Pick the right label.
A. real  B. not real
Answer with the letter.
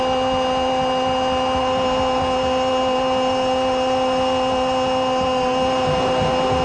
B